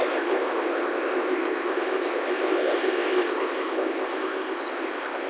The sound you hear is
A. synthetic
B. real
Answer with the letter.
A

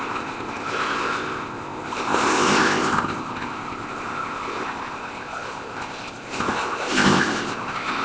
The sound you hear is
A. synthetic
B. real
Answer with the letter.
A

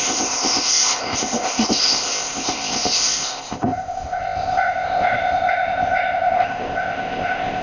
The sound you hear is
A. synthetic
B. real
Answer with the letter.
A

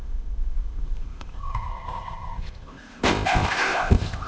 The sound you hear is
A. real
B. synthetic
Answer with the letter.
B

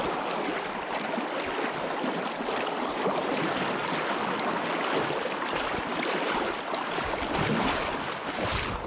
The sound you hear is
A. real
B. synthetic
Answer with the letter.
A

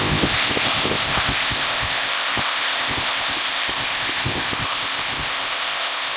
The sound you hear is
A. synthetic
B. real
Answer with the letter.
A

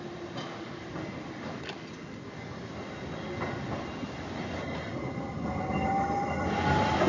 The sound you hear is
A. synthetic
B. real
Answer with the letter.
B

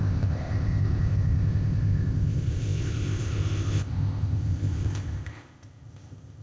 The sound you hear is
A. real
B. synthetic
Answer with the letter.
B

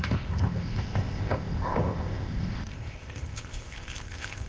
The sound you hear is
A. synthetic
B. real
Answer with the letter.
A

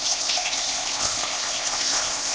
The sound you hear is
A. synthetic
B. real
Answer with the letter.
A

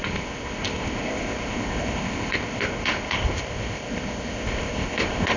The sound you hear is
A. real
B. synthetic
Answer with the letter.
B